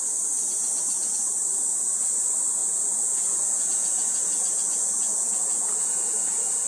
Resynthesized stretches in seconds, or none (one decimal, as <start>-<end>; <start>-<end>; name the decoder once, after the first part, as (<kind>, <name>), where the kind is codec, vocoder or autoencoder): 2.6-6.7 (vocoder, Vocos)